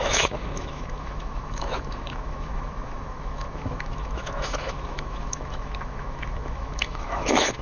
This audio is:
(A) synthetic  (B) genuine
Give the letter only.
A